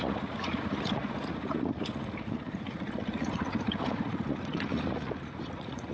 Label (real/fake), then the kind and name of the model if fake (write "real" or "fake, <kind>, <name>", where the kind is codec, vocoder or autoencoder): fake, vocoder, Vocos